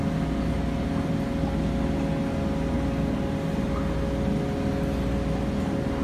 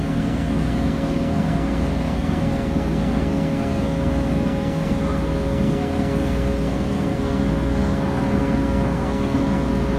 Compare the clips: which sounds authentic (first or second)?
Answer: first